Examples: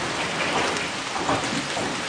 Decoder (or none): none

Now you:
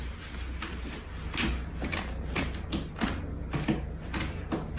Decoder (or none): none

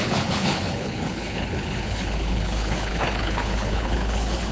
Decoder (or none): codec, HILCodec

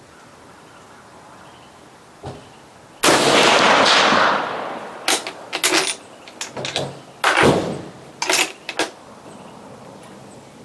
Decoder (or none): none